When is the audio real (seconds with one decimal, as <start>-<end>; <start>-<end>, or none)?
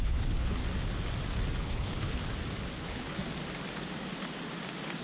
0.6-1.6; 2.2-2.8; 3.2-5.0